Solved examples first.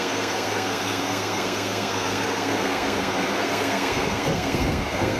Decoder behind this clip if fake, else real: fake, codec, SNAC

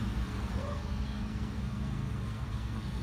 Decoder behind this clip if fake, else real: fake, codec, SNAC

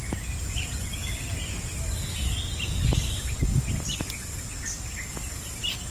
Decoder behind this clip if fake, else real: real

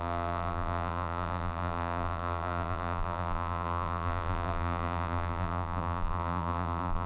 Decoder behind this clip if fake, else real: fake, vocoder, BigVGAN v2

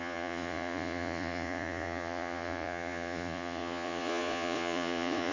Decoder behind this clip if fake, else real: fake, vocoder, Vocos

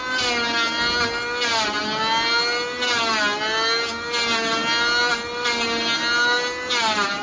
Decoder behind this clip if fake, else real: real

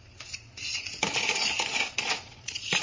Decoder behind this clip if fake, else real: fake, vocoder, Vocos